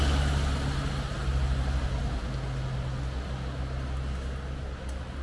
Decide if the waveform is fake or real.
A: real